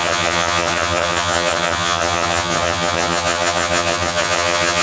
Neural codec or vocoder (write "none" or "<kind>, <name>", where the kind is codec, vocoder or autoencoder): vocoder, HiFi-GAN